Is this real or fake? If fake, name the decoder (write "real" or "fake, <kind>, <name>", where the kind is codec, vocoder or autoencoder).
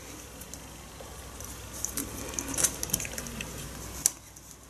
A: real